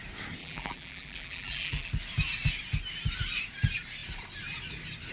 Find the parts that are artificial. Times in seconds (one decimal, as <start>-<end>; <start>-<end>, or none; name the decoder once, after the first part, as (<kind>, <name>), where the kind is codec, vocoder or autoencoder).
0.4-1.9 (vocoder, BigVGAN v2)